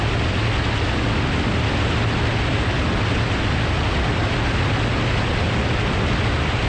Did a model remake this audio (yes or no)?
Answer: no